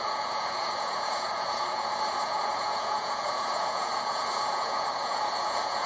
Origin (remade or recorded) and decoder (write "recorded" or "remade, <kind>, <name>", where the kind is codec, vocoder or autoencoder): remade, vocoder, Vocos